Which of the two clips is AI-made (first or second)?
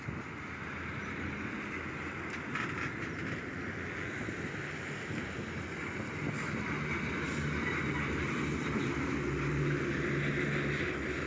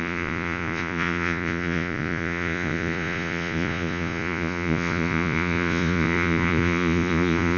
second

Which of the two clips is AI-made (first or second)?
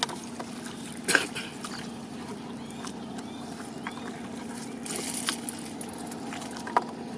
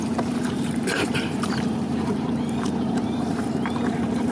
second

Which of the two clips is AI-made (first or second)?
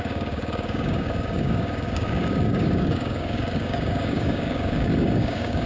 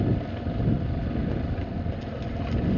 first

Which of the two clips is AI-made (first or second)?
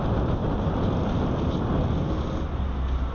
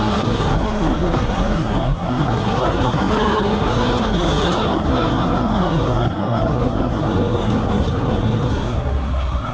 second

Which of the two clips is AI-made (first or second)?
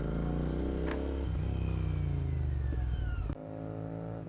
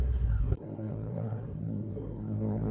second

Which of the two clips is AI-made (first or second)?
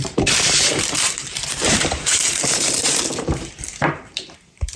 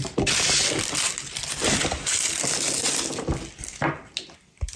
first